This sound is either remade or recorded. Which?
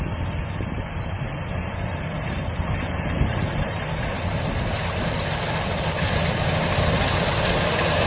recorded